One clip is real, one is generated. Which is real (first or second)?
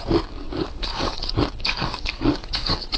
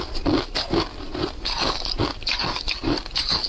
second